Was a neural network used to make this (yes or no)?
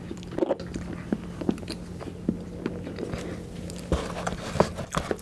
no